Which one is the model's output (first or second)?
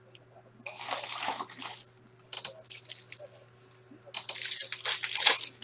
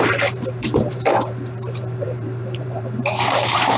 second